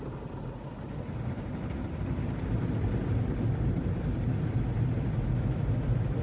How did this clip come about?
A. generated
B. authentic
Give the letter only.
A